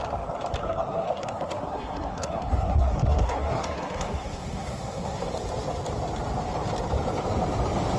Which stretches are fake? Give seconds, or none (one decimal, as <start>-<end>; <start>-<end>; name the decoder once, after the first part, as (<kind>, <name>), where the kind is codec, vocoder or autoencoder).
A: 0.6-5.3 (codec, SNAC)